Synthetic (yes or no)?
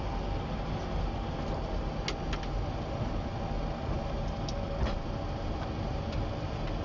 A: no